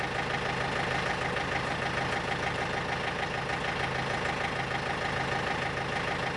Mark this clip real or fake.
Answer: real